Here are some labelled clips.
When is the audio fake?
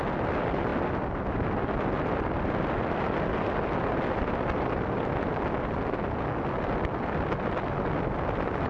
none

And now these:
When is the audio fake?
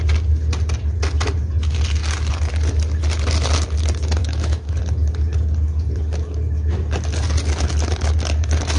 4.2-4.8 (autoencoder, DAC-VAE)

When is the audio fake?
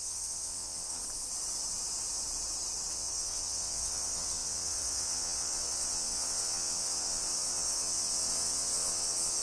0.0-1.0 (vocoder, WaveNeXt); 2.9-9.4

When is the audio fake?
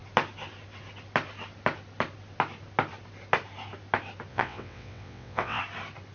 4.3-5.6 (vocoder, WaveNeXt)